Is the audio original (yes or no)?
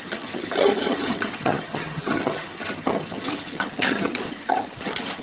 no